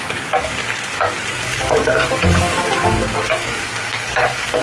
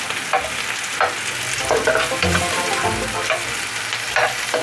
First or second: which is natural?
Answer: second